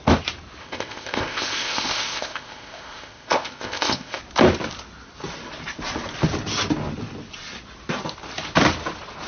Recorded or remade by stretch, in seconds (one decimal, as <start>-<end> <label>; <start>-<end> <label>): 0.0-0.6 recorded; 0.6-4.2 remade; 4.2-9.3 recorded